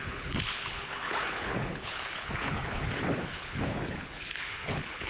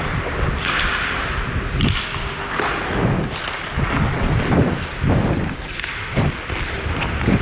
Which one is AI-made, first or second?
first